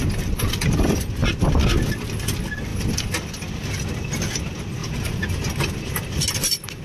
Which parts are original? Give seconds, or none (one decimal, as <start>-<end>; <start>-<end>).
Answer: 0.0-6.8